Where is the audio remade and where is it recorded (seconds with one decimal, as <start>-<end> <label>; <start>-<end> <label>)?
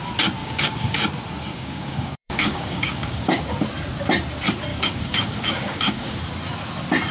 0.0-0.4 recorded; 0.4-1.0 remade; 1.0-1.5 recorded; 1.5-3.4 remade; 3.4-4.7 recorded; 4.7-6.2 remade; 6.2-7.1 recorded